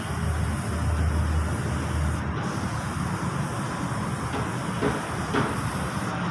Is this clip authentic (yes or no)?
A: yes